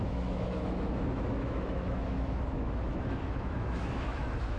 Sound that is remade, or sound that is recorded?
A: remade